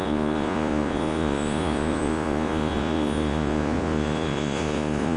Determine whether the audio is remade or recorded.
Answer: remade